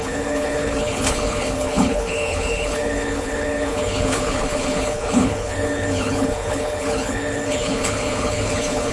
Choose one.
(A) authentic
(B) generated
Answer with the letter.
B